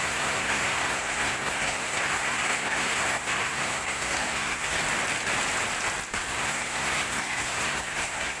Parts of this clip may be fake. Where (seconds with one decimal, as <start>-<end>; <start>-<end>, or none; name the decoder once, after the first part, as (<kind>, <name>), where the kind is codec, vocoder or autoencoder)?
0.0-4.8 (codec, SNAC); 6.1-8.4

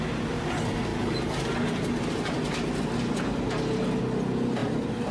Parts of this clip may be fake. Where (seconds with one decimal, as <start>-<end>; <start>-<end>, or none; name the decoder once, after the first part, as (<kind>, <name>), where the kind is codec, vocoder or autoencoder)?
4.6-5.1 (vocoder, BigVGAN v2)

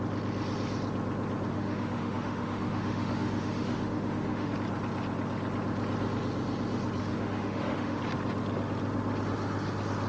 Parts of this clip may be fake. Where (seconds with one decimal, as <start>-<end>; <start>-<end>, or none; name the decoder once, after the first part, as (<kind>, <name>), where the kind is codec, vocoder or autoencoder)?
1.5-4.5 (autoencoder, DAC-VAE); 7.0-8.0

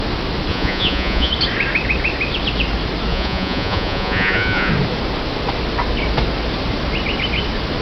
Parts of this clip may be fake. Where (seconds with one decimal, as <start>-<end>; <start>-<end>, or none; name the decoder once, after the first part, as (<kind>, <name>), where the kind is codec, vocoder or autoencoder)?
0.5-1.3 (vocoder, Vocos); 3.1-4.7

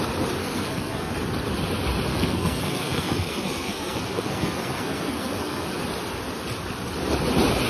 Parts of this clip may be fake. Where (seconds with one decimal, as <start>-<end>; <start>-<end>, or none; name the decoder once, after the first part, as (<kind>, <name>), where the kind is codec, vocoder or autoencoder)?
0.4-1.1 (codec, SNAC); 2.1-5.8

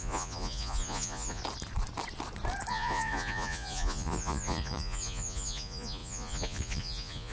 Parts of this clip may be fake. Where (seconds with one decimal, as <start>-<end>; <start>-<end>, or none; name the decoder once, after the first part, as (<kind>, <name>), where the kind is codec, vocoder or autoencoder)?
0.0-1.4 (vocoder, Vocos); 2.7-7.3

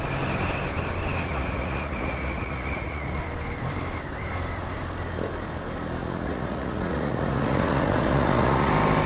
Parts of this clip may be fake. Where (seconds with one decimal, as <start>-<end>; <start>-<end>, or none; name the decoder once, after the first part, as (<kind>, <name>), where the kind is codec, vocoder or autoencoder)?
1.2-3.2 (vocoder, Vocos); 6.0-8.7

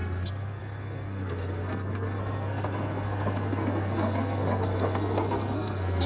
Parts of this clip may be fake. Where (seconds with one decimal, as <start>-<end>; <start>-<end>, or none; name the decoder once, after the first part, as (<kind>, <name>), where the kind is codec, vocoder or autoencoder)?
0.0-6.1 (codec, SNAC)